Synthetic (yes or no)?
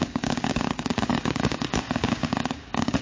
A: yes